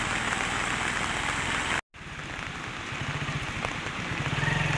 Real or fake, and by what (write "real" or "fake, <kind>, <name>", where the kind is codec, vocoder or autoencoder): real